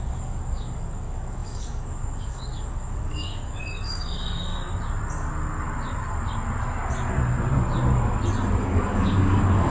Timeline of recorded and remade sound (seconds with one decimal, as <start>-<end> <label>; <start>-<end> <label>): 0.0-4.5 remade; 4.5-8.6 recorded; 8.6-9.7 remade